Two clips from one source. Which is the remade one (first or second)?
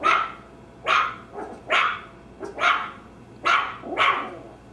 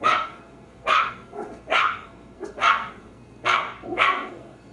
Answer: second